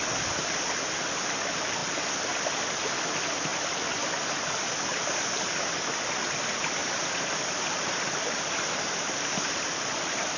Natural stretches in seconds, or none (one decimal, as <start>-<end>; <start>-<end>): 0.0-10.4